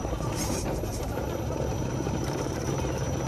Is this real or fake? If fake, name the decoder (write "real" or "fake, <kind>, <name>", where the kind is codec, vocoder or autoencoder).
fake, vocoder, BigVGAN v2